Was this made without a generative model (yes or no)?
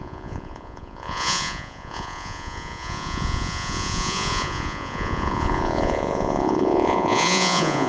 no